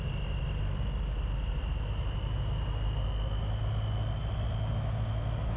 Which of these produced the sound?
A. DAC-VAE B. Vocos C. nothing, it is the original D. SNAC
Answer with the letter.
C